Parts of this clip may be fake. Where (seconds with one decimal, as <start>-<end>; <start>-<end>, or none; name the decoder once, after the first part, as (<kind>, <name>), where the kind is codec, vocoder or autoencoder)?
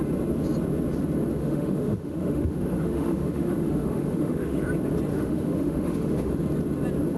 1.4-4.6 (autoencoder, DAC-VAE); 5.1-6.3